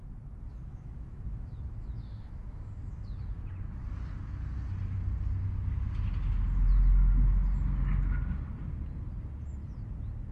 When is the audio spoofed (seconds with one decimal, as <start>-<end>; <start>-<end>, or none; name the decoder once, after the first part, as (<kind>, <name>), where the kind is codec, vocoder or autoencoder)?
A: 0.5-3.4 (autoencoder, DAC-VAE)